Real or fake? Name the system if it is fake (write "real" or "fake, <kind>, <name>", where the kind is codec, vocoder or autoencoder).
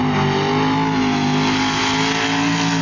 real